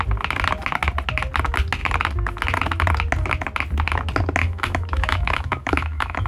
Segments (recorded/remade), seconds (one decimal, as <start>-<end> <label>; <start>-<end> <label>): 0.0-4.4 recorded; 4.4-6.3 remade